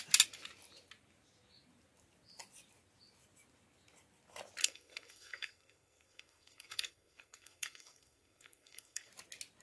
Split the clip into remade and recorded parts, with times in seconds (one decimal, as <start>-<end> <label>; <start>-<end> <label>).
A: 0.0-4.6 recorded; 4.6-9.1 remade; 9.1-9.6 recorded